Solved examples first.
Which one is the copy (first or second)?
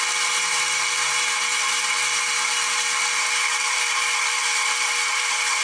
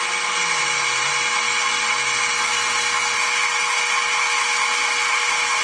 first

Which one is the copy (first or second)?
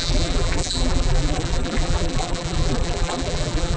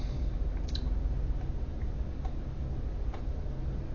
first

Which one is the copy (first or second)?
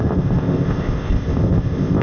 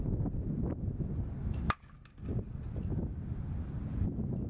first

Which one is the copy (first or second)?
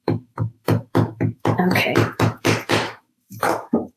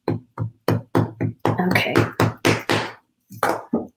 first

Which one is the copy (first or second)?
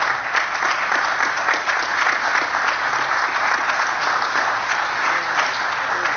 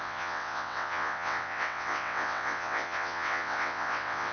second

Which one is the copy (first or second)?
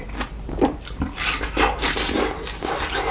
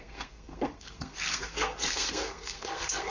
second